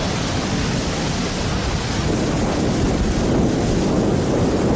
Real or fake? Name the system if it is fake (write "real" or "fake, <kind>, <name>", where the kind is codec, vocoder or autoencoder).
real